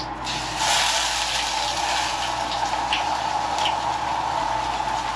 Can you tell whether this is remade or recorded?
recorded